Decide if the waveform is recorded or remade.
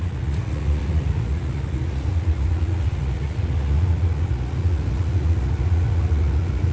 remade